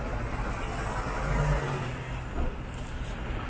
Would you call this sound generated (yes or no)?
no